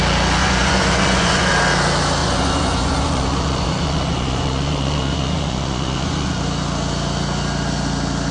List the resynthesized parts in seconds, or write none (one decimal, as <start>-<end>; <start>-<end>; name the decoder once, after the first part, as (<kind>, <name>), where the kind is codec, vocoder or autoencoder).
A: 0.4-1.5 (vocoder, Vocos); 2.2-6.4